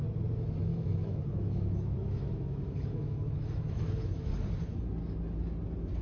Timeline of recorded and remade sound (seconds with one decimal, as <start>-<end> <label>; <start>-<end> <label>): 0.0-0.7 recorded; 0.7-4.3 remade; 4.3-6.0 recorded